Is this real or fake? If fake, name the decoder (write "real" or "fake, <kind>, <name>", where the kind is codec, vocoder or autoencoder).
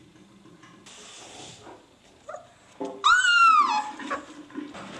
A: real